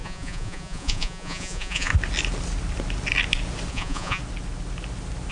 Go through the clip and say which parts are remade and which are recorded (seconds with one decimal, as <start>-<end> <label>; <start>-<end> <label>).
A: 0.0-1.9 remade; 1.9-3.7 recorded; 3.7-4.2 remade; 4.2-5.3 recorded